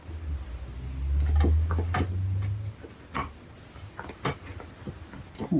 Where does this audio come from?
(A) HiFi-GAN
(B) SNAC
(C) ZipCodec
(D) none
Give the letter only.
D